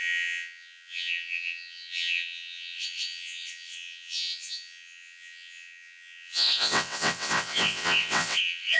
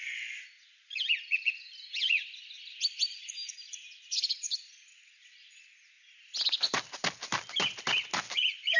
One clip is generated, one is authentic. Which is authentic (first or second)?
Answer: second